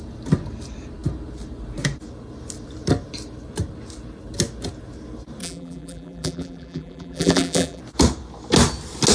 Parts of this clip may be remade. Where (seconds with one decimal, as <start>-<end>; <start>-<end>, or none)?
5.4-7.8